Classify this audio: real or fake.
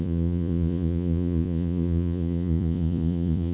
fake